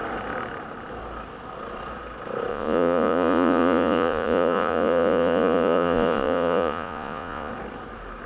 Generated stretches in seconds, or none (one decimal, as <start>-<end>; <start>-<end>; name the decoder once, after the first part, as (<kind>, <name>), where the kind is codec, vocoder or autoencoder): 2.5-7.5 (vocoder, Vocos)